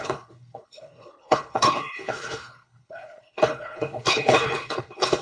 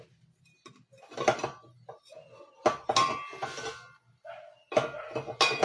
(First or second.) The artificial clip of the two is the first